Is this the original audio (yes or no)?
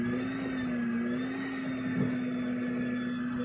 yes